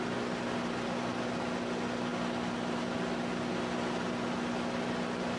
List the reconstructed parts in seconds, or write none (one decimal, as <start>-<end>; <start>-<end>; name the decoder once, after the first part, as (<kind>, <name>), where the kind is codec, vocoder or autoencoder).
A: none